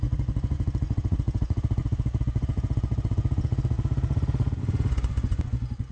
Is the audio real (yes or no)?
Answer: no